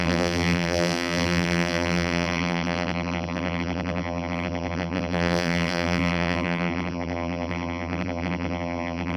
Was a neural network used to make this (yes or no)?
yes